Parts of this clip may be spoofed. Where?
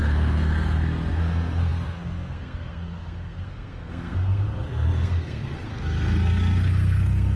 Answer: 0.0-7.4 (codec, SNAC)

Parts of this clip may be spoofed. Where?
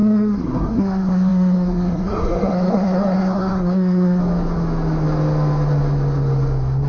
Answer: 0.0-4.2 (codec, SNAC)